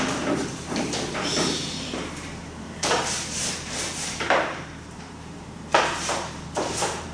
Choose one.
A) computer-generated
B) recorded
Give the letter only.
A